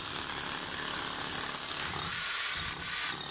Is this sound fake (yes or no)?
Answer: no